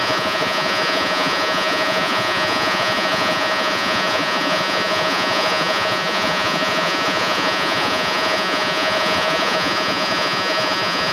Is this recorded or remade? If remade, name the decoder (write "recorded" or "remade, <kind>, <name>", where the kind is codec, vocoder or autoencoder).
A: remade, vocoder, Vocos